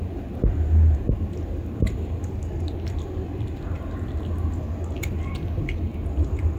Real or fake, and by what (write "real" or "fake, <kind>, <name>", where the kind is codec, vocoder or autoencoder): real